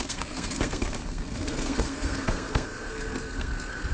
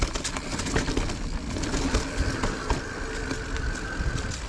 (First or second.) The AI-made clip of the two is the first